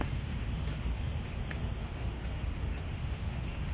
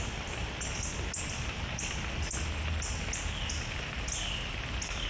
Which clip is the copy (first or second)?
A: first